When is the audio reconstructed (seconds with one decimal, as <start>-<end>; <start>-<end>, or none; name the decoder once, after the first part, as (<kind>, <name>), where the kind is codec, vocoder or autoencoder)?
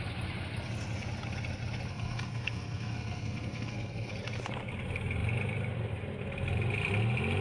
1.9-4.1 (codec, SNAC)